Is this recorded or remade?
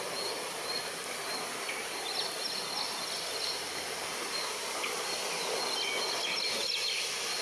recorded